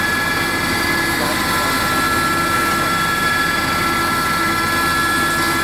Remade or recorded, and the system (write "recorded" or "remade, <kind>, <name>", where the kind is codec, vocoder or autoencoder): recorded